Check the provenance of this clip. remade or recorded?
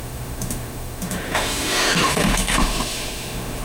remade